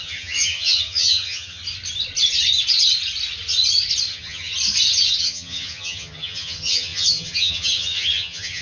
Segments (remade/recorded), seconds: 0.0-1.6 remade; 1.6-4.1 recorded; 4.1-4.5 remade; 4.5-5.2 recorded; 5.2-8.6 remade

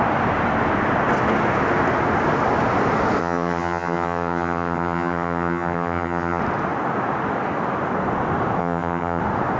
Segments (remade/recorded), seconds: 0.0-3.2 recorded; 3.2-6.4 remade; 6.4-8.6 recorded; 8.6-9.2 remade; 9.2-9.6 recorded

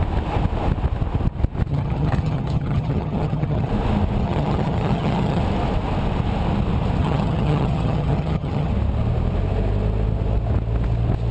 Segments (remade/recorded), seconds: 0.0-1.7 recorded; 1.7-3.7 remade; 3.7-4.2 recorded; 4.2-5.4 remade; 5.4-7.0 recorded; 7.0-8.7 remade; 8.7-11.3 recorded